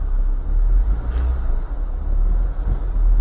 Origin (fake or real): real